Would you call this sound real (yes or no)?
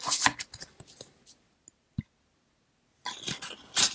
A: yes